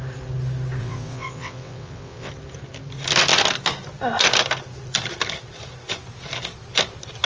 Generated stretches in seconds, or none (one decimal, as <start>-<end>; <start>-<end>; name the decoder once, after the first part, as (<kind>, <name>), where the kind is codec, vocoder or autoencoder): 0.8-2.3 (vocoder, WaveNeXt)